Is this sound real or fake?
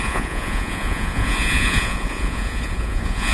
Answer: fake